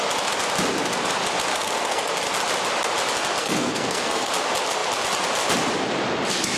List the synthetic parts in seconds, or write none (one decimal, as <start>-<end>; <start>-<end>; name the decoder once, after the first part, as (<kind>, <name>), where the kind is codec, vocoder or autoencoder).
1.5-2.1 (codec, SNAC); 3.4-4.3